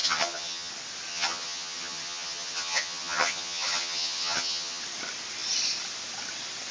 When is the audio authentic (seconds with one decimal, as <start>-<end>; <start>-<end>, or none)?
0.7-1.1; 4.8-6.7